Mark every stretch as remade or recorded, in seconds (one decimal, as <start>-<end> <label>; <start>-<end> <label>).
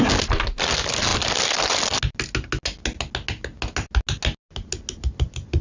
0.0-5.6 recorded